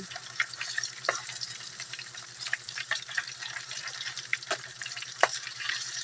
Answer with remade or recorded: remade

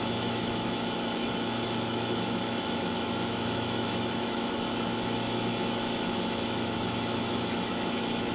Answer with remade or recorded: remade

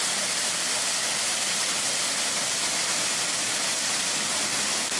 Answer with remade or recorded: recorded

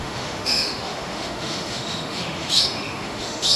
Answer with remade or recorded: remade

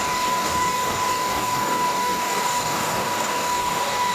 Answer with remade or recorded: remade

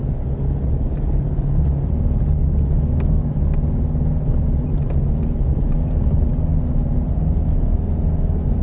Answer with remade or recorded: recorded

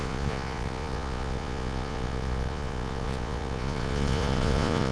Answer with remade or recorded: remade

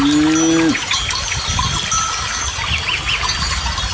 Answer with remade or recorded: recorded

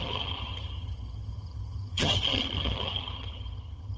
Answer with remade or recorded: remade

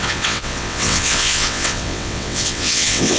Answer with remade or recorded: remade